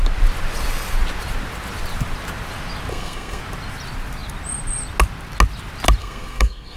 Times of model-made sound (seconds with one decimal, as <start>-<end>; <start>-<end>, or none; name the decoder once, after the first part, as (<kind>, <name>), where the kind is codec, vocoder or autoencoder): 2.9-3.4 (codec, SNAC); 6.0-6.8